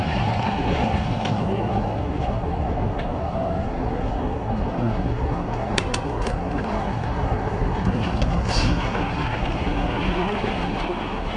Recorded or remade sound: remade